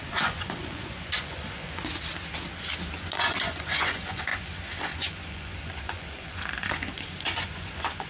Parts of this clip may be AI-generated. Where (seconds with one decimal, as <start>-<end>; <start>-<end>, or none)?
0.0-1.9; 3.0-8.1